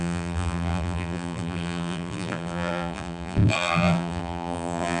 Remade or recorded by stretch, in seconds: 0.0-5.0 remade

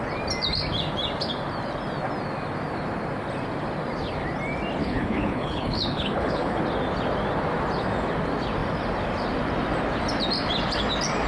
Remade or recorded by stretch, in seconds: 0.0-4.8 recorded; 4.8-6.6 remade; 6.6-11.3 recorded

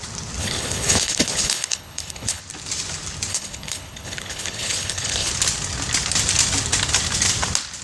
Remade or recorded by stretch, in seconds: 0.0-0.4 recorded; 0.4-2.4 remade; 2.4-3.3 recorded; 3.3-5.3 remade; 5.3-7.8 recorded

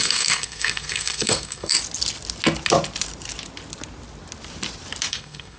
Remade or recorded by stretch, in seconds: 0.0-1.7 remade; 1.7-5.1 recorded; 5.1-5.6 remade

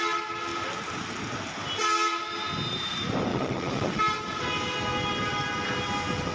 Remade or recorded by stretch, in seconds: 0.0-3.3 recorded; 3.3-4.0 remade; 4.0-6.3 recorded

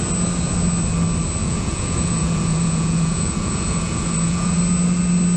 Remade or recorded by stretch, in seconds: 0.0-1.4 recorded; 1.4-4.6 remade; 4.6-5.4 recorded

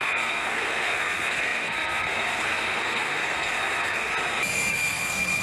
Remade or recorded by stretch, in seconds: 0.0-4.1 remade; 4.1-4.7 recorded; 4.7-5.4 remade